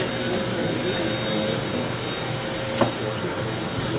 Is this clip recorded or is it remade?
recorded